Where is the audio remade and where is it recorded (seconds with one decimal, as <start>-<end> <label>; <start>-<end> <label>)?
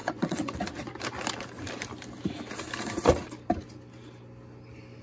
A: 0.0-0.6 remade; 0.6-5.0 recorded